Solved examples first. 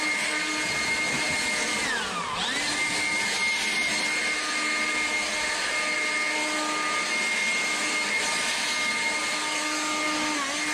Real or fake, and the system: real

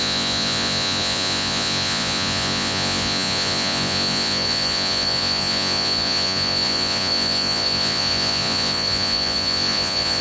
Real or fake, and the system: fake, vocoder, Vocos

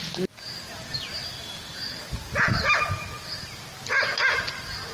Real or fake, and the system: real